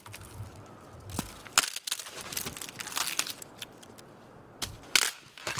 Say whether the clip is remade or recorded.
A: recorded